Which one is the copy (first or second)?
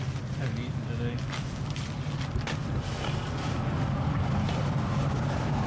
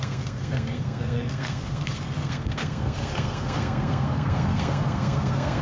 second